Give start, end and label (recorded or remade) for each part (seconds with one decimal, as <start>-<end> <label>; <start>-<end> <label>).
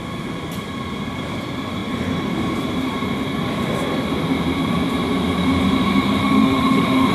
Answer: 0.0-6.2 recorded; 6.2-7.1 remade